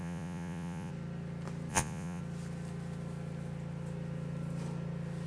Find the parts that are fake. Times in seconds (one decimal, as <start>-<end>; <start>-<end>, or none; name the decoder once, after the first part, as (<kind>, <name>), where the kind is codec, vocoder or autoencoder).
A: 0.0-0.9 (vocoder, Vocos); 1.7-2.2